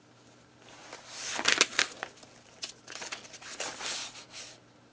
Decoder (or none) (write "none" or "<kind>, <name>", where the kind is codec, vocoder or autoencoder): none